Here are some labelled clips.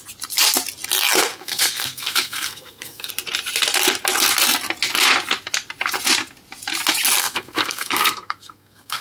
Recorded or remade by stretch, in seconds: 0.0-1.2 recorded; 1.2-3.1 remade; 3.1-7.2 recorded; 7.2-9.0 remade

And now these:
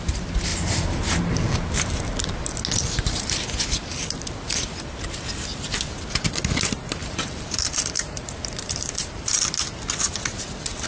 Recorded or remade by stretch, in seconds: 0.0-0.5 recorded; 0.5-1.2 remade; 1.2-7.0 recorded; 7.0-9.4 remade; 9.4-10.9 recorded

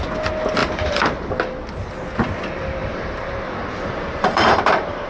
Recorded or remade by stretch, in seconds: 0.0-0.6 recorded; 0.6-1.3 remade; 1.3-2.8 recorded; 2.8-5.1 remade

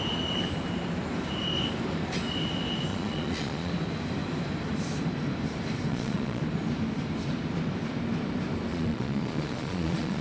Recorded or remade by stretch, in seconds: 0.0-2.9 recorded; 2.9-3.7 remade; 3.7-5.9 recorded; 5.9-6.4 remade; 6.4-8.7 recorded; 8.7-10.2 remade